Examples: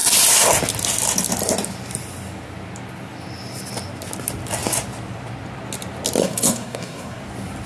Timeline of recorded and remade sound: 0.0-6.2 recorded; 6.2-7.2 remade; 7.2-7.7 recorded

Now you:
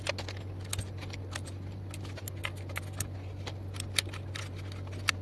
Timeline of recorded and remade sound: 0.0-5.2 recorded

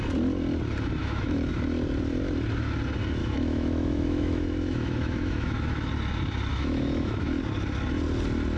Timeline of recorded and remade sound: 0.0-1.0 recorded; 1.0-1.5 remade; 1.5-3.2 recorded; 3.2-5.9 remade; 5.9-6.5 recorded; 6.5-7.4 remade; 7.4-8.6 recorded

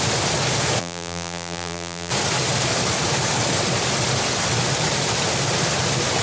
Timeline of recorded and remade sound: 0.0-0.8 recorded; 0.8-2.1 remade; 2.1-6.2 recorded

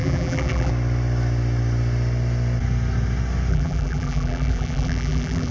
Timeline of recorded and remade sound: 0.0-0.7 remade; 0.7-3.5 recorded; 3.5-5.5 remade

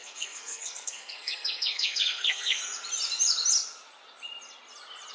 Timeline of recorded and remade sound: 0.0-2.6 remade; 2.6-5.1 recorded